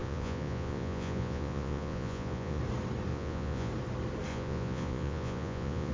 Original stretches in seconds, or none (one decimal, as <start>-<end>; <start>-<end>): 2.6-3.1; 3.7-4.3